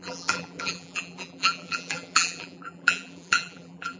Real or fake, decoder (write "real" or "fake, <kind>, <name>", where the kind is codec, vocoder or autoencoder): fake, vocoder, BigVGAN v2